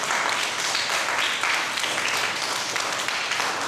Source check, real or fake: real